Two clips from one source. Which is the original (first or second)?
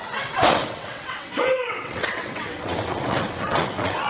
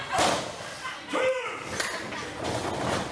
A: second